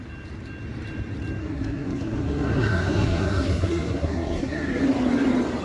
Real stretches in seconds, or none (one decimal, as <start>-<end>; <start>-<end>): 0.0-1.4; 4.8-5.6